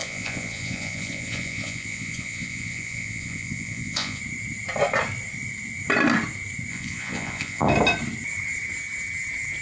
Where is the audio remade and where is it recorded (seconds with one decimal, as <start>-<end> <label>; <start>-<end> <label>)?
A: 0.0-4.2 remade; 4.2-6.7 recorded; 6.7-7.7 remade; 7.7-9.6 recorded